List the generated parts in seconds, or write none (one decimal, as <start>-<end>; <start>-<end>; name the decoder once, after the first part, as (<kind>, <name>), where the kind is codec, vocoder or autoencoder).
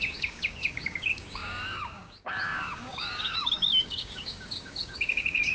0.0-5.5 (codec, DAC)